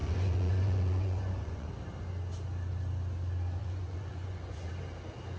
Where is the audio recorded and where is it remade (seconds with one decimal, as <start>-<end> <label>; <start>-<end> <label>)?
0.0-1.7 remade; 1.7-3.6 recorded; 3.6-4.7 remade; 4.7-5.4 recorded